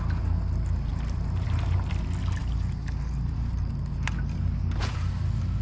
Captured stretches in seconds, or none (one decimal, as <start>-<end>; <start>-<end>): 0.0-0.9; 1.9-2.4; 3.6-5.6